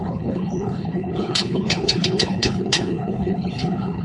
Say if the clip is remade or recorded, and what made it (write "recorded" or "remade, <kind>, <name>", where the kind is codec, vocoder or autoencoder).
remade, codec, HILCodec